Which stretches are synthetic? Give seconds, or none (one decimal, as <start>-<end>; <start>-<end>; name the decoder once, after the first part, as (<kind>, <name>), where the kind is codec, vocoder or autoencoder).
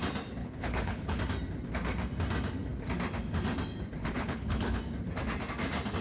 0.4-1.2 (codec, HILCodec); 4.0-4.8